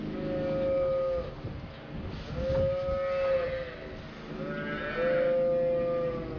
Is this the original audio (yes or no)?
yes